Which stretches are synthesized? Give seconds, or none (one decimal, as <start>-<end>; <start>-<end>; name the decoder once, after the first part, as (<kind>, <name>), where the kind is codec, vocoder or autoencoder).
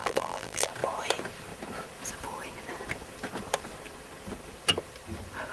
0.0-0.7 (vocoder, BigVGAN v2)